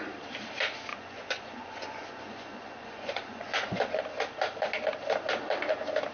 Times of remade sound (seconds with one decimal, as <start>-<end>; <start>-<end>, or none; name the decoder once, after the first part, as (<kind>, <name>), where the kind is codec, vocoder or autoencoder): 0.9-4.0 (vocoder, Vocos)

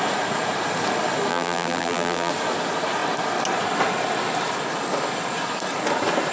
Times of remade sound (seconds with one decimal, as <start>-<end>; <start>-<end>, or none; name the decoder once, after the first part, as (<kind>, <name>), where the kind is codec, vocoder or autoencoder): 1.3-2.3 (vocoder, BigVGAN v2)

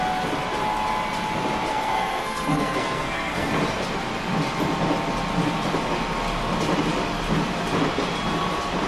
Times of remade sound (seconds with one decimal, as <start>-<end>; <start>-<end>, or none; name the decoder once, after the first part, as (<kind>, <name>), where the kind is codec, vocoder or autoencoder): 1.7-3.5 (codec, SNAC)

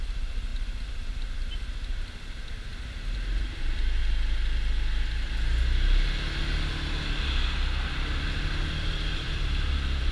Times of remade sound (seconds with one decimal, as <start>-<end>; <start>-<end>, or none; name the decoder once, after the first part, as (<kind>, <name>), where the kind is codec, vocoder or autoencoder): 0.0-4.0 (vocoder, BigVGAN v2); 8.7-10.1

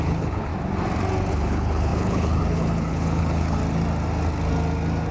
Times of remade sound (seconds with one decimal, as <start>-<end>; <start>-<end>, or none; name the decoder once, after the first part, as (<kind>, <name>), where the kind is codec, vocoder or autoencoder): 0.0-0.5 (codec, HILCodec); 1.3-3.6

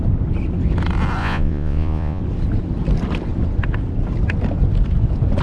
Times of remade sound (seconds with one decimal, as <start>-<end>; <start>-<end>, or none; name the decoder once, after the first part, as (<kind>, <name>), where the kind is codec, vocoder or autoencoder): 1.2-2.2 (vocoder, Vocos)

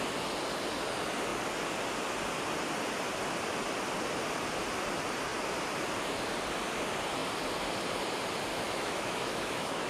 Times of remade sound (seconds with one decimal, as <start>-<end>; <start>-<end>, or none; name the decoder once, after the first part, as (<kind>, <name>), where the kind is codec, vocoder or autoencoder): 8.5-9.9 (autoencoder, DAC-VAE)

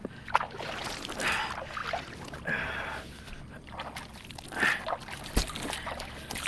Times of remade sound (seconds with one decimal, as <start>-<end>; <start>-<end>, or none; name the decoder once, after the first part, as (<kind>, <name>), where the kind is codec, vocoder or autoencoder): none